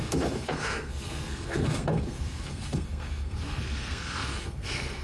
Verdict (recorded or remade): remade